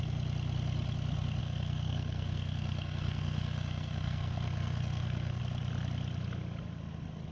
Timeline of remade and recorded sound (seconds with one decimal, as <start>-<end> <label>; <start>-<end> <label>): 0.0-1.4 recorded; 1.4-5.4 remade; 5.4-7.3 recorded